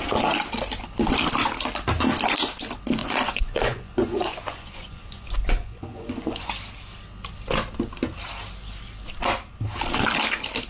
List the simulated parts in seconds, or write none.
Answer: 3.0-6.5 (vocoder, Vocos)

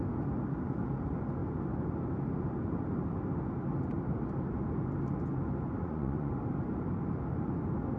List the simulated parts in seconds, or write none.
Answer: 5.8-6.3 (vocoder, Vocos)